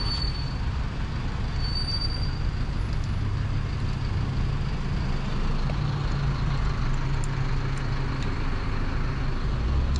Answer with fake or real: real